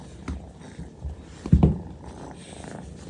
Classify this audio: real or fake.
real